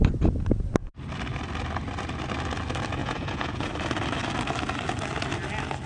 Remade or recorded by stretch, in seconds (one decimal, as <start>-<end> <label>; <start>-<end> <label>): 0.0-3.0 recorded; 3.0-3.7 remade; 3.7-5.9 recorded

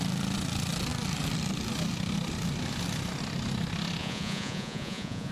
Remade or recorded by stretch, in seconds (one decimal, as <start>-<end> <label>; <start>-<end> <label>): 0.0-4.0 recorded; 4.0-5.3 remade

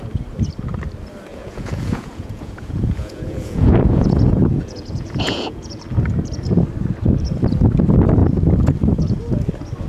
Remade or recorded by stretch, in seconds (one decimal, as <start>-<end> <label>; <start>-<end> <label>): 0.0-1.3 recorded; 1.3-5.8 remade; 5.8-9.9 recorded

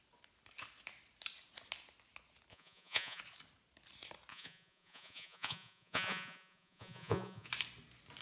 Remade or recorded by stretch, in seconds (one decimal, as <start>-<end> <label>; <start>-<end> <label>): 0.0-2.5 recorded; 2.5-3.2 remade; 3.2-4.3 recorded; 4.3-7.5 remade; 7.5-8.2 recorded